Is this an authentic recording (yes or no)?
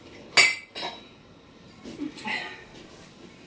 yes